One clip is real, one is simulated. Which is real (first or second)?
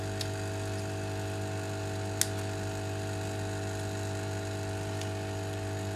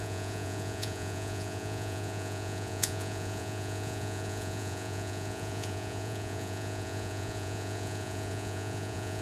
first